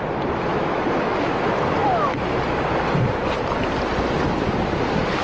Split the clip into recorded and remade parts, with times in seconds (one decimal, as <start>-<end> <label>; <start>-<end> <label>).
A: 0.0-0.5 recorded; 0.5-1.3 remade; 1.3-5.2 recorded